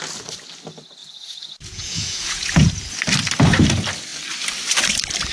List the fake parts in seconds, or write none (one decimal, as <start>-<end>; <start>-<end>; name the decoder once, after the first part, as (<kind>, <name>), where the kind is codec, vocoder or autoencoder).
1.0-2.7 (vocoder, Vocos)